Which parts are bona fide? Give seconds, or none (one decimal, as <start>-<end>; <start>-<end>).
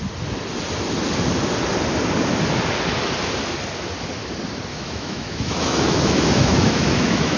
0.0-4.7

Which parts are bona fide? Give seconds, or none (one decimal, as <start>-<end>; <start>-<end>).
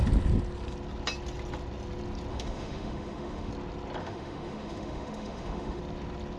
0.0-2.3; 3.5-4.0; 5.8-6.4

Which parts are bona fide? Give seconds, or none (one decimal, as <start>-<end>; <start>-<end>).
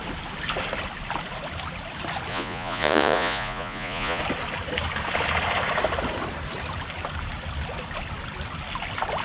0.0-2.3; 4.2-9.2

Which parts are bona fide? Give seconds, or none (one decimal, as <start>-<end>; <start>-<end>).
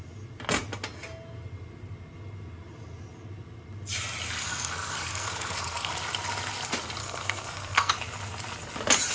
0.0-4.4; 5.9-7.0; 7.9-9.1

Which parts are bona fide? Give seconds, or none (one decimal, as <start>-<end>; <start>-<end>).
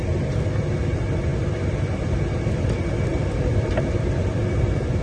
0.0-3.1; 3.7-5.0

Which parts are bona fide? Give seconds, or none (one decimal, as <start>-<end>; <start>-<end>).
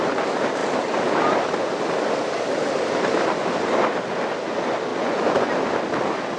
0.0-4.9; 5.5-6.4